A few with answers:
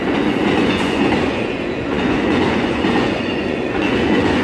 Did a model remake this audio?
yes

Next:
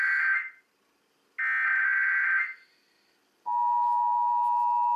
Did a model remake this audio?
no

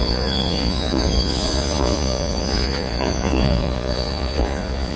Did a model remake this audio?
yes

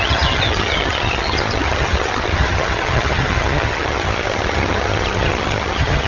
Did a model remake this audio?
yes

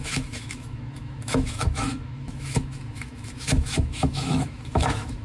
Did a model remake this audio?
yes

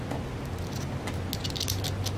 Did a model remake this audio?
no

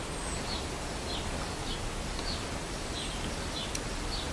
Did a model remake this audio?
no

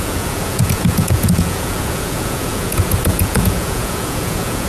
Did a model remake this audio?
yes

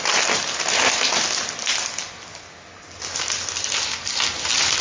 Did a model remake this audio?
no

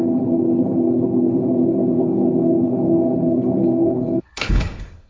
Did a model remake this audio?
yes